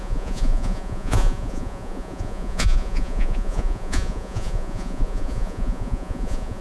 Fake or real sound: fake